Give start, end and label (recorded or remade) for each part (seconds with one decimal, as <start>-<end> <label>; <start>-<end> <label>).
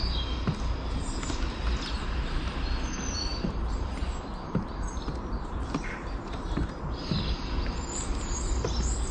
0.0-3.3 recorded; 3.3-6.8 remade; 6.8-9.1 recorded